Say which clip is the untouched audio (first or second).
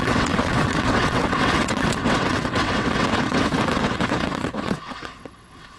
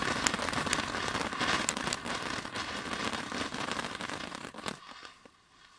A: second